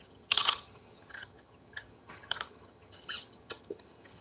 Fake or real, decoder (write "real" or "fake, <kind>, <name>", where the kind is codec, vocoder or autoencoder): fake, vocoder, HiFi-GAN